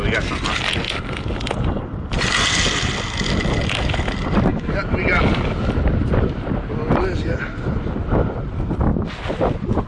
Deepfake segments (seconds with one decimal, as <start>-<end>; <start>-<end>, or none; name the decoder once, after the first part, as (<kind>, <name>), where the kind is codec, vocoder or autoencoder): 6.1-6.7 (vocoder, BigVGAN v2)